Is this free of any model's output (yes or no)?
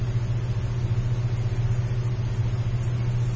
yes